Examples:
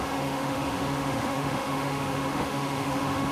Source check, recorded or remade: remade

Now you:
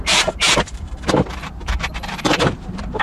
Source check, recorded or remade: remade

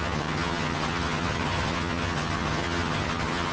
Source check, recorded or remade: remade